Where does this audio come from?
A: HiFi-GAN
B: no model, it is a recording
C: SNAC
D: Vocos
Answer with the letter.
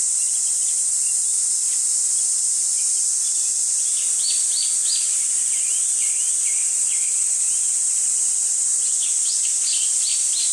B